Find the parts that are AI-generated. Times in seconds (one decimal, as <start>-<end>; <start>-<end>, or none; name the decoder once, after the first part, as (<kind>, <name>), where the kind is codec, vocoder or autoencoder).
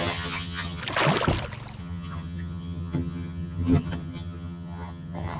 0.0-0.8 (vocoder, HiFi-GAN); 1.8-5.4